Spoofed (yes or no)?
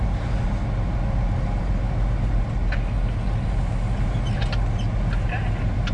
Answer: no